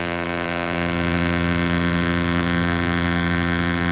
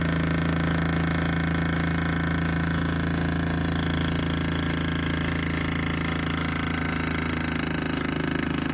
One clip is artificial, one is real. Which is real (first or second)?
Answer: second